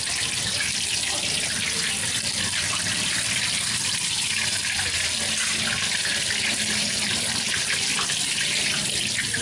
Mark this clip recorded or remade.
recorded